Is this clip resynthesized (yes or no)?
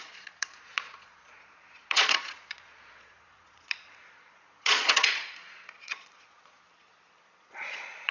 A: yes